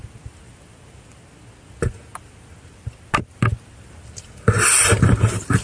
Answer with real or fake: real